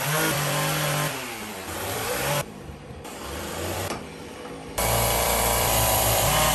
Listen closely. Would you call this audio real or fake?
fake